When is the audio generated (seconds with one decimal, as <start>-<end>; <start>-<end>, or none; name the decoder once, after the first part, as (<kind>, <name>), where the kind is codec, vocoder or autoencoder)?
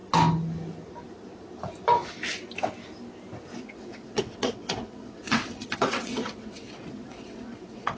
3.6-8.0 (vocoder, WaveNeXt)